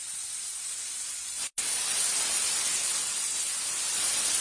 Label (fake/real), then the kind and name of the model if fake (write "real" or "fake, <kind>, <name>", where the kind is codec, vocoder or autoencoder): real